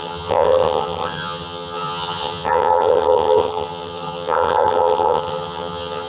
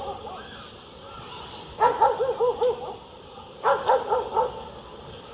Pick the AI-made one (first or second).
first